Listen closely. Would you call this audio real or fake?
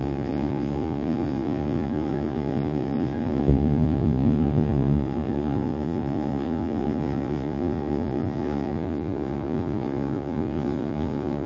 fake